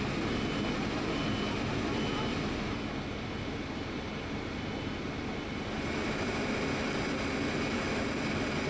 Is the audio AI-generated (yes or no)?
no